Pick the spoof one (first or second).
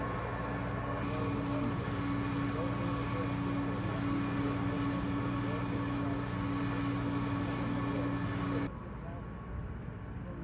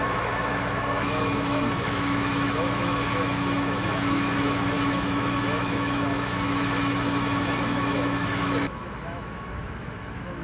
second